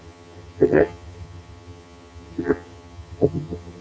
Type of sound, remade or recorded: remade